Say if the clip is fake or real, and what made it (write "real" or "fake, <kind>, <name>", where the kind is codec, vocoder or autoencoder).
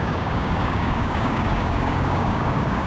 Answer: fake, codec, DAC